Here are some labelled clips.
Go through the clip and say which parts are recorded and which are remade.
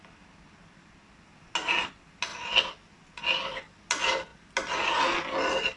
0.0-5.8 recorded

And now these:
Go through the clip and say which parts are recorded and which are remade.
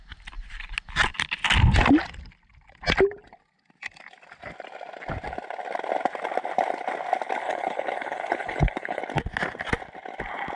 0.0-7.4 recorded; 7.4-9.0 remade; 9.0-10.6 recorded